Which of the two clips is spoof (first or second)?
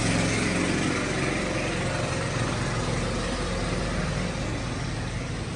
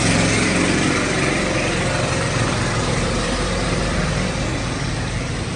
second